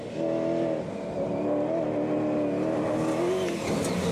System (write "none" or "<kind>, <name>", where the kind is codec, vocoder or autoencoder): none